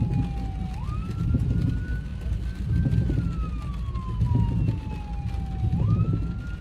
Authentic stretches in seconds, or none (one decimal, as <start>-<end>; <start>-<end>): 0.0-6.6